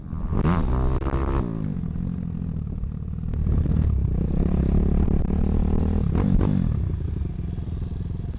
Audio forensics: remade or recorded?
recorded